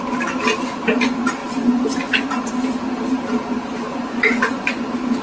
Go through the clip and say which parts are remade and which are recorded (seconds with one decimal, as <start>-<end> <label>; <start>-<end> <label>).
0.0-3.9 recorded; 3.9-4.8 remade; 4.8-5.2 recorded